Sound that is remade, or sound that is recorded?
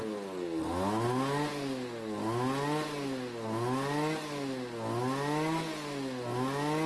recorded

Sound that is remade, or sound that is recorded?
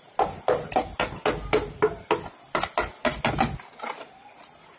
recorded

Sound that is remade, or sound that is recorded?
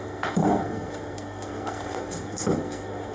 remade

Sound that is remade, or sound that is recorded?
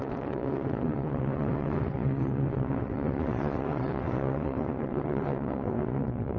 remade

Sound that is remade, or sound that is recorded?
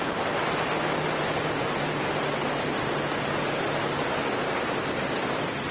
recorded